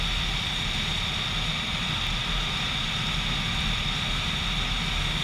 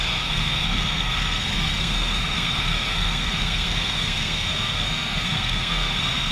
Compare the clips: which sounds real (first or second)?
first